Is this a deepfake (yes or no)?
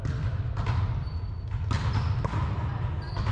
no